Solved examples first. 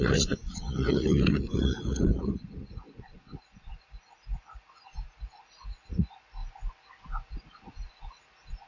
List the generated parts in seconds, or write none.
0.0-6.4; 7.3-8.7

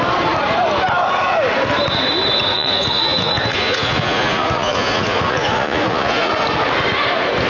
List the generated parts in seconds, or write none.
2.5-6.3